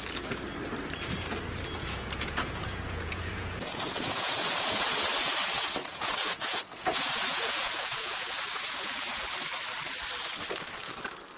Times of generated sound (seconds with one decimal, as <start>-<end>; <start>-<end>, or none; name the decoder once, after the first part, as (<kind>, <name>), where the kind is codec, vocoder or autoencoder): 1.8-5.1 (vocoder, Vocos); 5.8-9.2